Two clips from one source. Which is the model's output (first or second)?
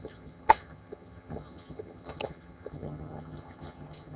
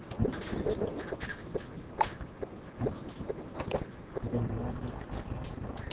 first